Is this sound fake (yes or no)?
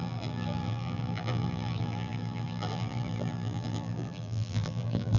yes